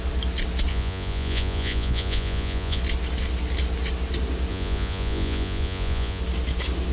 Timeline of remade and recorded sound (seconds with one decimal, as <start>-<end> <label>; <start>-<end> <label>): 0.0-0.7 recorded; 0.7-2.8 remade; 2.8-4.5 recorded; 4.5-6.2 remade; 6.2-6.9 recorded